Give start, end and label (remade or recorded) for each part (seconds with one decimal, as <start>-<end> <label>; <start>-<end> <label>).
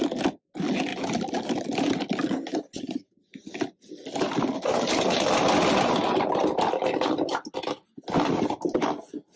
0.0-9.4 recorded